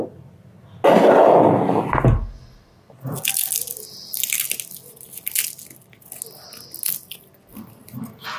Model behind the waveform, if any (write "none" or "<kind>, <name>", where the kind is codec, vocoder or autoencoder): none